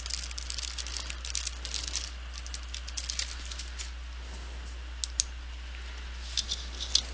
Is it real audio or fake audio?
real